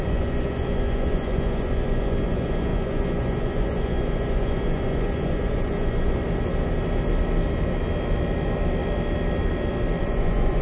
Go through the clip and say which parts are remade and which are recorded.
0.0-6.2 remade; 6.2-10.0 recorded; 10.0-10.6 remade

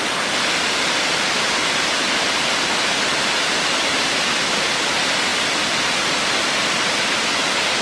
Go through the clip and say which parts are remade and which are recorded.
0.0-7.8 recorded